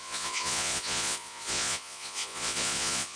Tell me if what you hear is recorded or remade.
remade